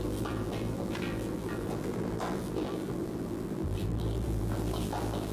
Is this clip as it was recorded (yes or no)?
no